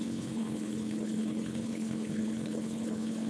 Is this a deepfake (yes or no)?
yes